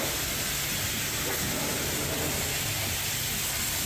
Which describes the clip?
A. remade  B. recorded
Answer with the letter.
B